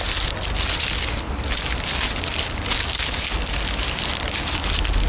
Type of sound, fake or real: real